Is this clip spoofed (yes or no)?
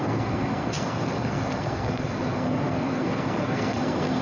yes